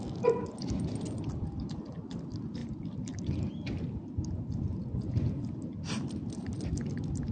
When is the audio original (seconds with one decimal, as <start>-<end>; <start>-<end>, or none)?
0.0-2.6; 4.4-7.3

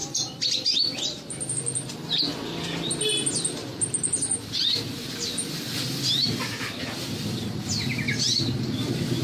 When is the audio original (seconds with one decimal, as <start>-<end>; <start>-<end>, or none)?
1.4-3.6; 8.4-9.2

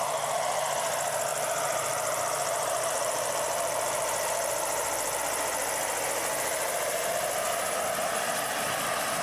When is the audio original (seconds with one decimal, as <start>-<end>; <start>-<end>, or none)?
0.0-1.3; 5.2-6.2; 7.1-9.2

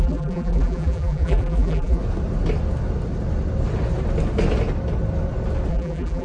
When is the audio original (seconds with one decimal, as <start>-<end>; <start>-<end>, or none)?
2.0-5.7

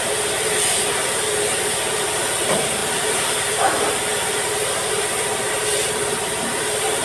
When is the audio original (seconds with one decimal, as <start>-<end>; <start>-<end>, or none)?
none